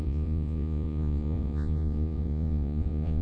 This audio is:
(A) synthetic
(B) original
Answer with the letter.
A